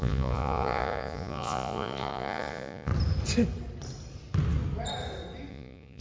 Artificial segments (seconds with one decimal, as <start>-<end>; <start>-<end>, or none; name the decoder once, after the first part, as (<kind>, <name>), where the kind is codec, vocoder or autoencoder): 0.0-2.9 (vocoder, Vocos); 5.5-6.0